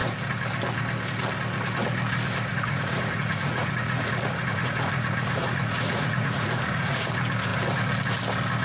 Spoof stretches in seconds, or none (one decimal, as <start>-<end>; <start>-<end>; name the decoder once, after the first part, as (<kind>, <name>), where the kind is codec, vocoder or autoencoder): 2.5-7.1 (vocoder, Vocos)